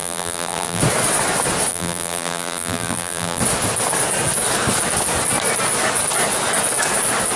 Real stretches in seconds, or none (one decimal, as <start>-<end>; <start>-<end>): 0.8-1.7; 3.4-7.4